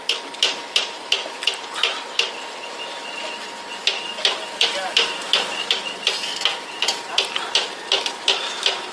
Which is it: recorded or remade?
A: recorded